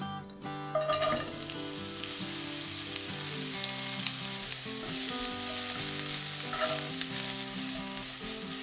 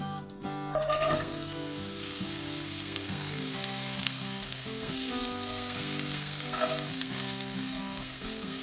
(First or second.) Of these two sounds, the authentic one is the first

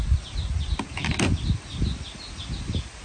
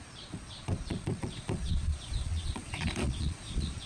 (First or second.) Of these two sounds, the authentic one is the first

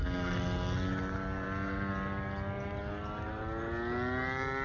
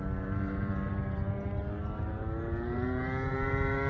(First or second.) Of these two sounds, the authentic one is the first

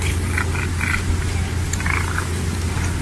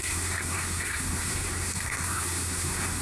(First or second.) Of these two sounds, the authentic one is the first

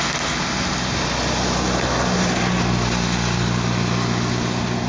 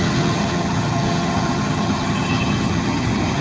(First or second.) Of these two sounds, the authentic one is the first